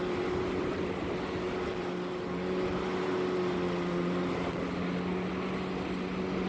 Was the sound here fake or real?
real